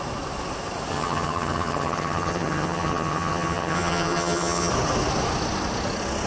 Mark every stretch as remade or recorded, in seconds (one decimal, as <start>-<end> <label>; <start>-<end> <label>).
0.0-0.9 recorded; 0.9-4.7 remade; 4.7-6.3 recorded